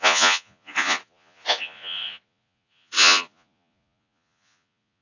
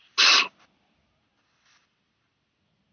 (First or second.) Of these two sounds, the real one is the second